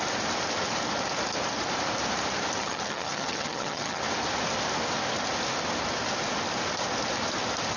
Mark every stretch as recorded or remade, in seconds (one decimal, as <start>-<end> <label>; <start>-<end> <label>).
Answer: 0.0-2.6 recorded; 2.6-4.0 remade; 4.0-7.8 recorded